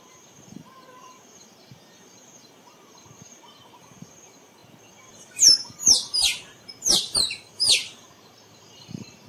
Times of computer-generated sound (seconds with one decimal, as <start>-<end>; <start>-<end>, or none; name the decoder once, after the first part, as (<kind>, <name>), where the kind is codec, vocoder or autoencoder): 0.0-9.3 (vocoder, BigVGAN v2)